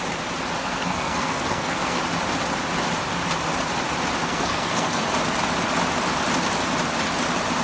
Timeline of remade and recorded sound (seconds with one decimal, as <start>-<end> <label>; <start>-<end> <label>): 0.0-0.6 recorded; 0.6-2.0 remade; 2.0-4.2 recorded; 4.2-5.0 remade; 5.0-7.6 recorded